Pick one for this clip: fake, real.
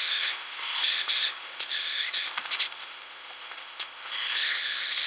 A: fake